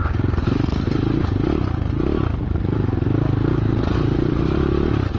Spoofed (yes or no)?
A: no